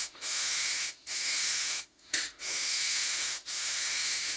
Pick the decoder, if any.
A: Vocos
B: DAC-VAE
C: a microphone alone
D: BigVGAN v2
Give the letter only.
B